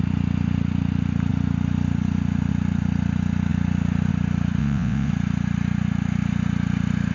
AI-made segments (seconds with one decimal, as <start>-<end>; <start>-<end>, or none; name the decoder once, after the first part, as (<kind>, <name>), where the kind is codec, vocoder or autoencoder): 4.6-5.1 (vocoder, WaveNeXt)